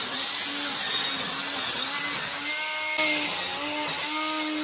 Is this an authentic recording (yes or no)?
yes